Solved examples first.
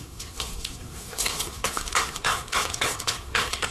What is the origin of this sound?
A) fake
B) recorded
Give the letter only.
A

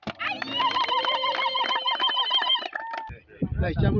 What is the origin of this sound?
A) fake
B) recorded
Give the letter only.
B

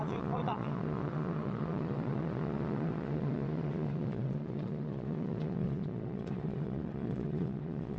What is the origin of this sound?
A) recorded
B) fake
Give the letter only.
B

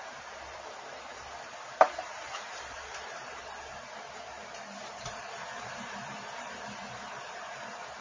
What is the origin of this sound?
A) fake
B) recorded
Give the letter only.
A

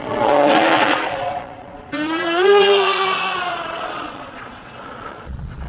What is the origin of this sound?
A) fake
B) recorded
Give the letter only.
A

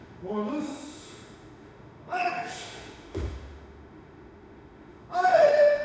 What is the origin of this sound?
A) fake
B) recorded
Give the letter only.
A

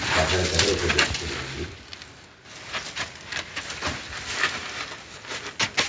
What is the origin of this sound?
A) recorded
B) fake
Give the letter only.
A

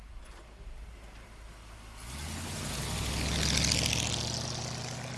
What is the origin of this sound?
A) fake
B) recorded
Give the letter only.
B